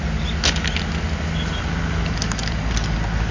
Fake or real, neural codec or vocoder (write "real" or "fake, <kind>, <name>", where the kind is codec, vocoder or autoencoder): real